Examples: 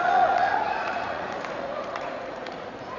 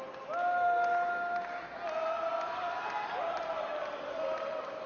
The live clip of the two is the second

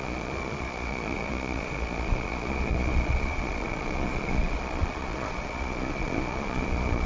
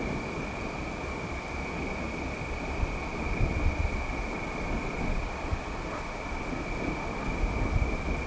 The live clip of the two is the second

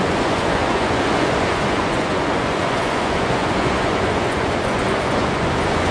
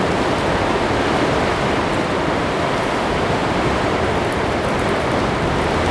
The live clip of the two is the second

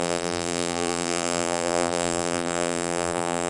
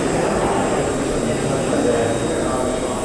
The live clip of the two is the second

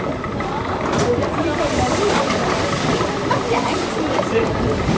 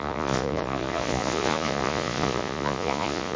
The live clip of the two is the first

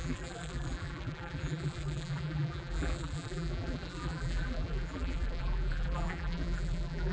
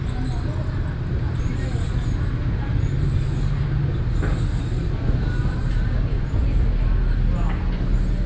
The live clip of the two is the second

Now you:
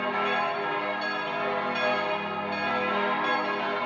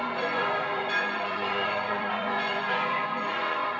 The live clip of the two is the first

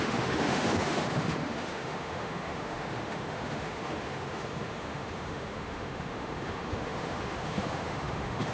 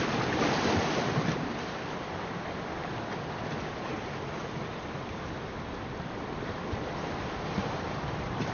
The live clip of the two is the second